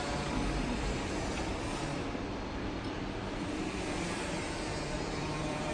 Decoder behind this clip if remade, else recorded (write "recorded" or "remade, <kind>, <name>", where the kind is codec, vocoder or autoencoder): remade, vocoder, BigVGAN v2